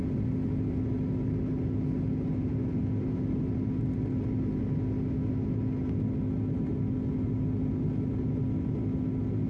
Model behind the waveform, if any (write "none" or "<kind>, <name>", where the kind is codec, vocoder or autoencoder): none